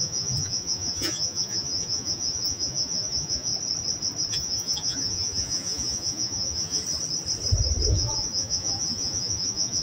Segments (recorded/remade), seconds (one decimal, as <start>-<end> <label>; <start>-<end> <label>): 0.0-3.5 remade; 3.5-4.3 recorded; 4.3-6.8 remade; 6.8-7.9 recorded; 7.9-9.8 remade